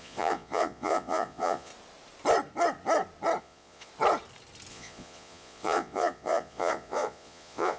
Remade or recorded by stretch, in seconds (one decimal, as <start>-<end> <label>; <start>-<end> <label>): 0.0-1.7 remade; 1.7-3.4 recorded; 3.4-3.9 remade; 3.9-4.7 recorded; 4.7-7.8 remade